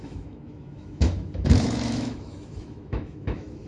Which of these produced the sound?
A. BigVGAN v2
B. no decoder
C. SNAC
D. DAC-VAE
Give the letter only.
D